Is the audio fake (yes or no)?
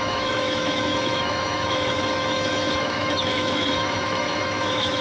yes